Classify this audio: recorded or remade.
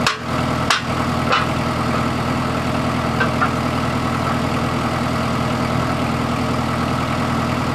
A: recorded